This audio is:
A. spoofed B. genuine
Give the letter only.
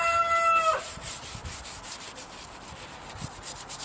B